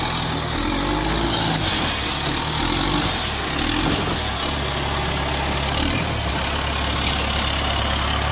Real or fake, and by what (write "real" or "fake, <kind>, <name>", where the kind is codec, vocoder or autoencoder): real